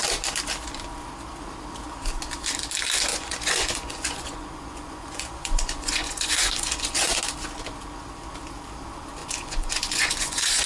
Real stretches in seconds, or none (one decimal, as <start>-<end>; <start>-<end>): 0.0-3.1; 7.2-9.2